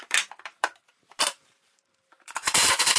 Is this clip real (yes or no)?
no